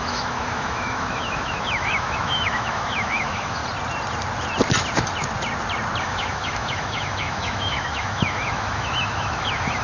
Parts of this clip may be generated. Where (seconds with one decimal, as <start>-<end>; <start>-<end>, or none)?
0.0-3.6; 6.0-9.8